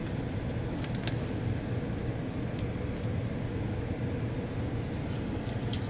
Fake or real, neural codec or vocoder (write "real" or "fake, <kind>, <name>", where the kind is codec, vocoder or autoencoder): real